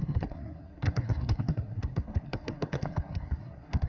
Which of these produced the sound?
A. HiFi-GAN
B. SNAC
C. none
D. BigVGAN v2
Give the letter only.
B